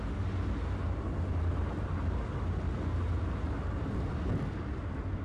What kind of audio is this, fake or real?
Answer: real